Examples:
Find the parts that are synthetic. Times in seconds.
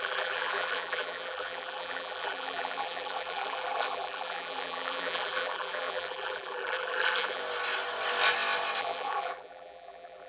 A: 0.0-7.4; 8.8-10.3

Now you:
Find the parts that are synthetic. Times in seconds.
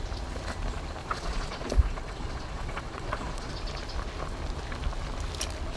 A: 1.0-3.5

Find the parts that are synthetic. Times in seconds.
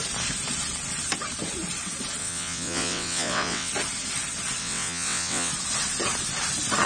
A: 2.2-3.7; 4.6-5.5